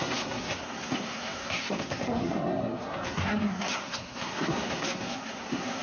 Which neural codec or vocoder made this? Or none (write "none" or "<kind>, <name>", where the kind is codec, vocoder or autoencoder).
codec, SNAC